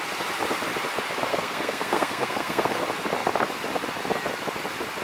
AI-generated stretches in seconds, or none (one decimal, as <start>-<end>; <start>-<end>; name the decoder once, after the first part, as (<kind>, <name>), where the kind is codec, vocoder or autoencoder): 1.3-2.8 (codec, SNAC)